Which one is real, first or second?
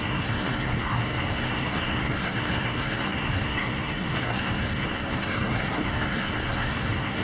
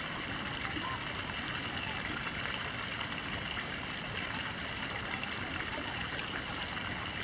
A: second